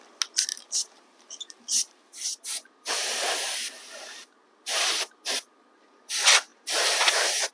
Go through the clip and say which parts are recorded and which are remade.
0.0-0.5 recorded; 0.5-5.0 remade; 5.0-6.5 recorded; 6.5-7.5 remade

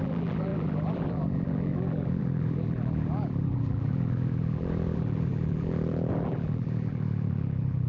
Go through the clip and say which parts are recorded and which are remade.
0.0-7.9 remade

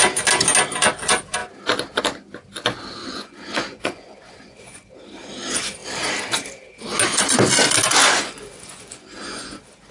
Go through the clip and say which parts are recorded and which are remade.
0.0-3.0 recorded; 3.0-4.9 remade; 4.9-8.0 recorded; 8.0-9.5 remade; 9.5-9.9 recorded